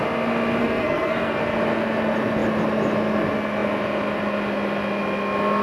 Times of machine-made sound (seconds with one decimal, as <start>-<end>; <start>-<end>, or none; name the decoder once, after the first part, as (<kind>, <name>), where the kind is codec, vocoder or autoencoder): 0.6-1.4 (codec, SNAC)